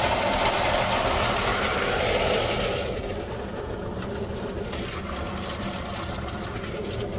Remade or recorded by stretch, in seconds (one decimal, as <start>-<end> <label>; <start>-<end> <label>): 0.0-7.2 recorded